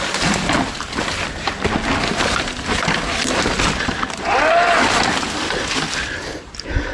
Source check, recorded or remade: recorded